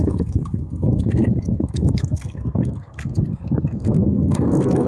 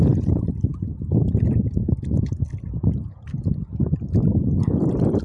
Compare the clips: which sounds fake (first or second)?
first